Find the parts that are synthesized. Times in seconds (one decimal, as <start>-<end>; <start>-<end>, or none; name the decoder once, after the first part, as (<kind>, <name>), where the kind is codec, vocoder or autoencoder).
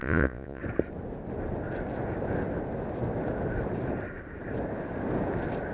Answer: 0.0-0.6 (vocoder, Vocos)